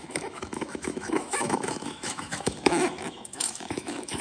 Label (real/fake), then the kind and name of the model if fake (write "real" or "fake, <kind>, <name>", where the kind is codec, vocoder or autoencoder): fake, autoencoder, DAC-VAE